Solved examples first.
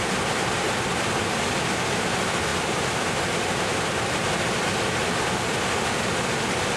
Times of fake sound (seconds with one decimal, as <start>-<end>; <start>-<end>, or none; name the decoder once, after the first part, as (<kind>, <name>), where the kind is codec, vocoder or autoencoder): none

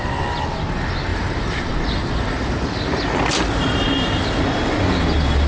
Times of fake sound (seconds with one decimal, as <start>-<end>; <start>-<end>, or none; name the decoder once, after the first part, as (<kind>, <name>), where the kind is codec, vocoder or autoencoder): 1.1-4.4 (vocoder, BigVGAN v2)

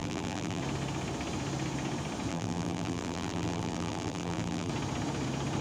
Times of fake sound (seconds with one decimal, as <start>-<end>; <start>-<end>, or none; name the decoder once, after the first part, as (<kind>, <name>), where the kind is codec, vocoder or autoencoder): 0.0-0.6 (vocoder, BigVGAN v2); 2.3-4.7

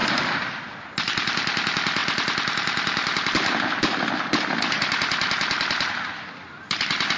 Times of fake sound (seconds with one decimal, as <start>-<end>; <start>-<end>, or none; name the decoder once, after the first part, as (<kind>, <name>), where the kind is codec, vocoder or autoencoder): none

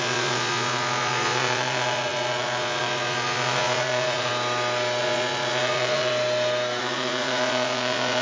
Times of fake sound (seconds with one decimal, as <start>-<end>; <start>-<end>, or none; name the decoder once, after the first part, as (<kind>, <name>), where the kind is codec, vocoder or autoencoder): 0.0-4.3 (vocoder, Vocos); 5.0-6.1; 6.8-8.2